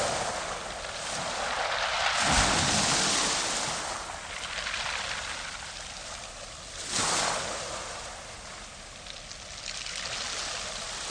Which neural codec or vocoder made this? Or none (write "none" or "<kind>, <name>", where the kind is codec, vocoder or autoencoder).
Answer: none